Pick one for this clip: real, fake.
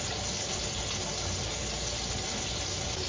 real